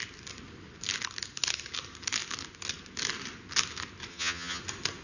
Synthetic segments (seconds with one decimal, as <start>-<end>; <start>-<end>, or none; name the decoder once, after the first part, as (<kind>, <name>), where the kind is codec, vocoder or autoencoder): 4.1-4.6 (vocoder, HiFi-GAN)